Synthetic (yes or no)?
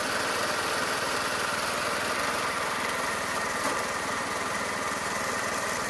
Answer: yes